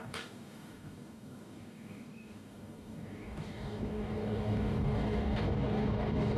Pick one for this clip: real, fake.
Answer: fake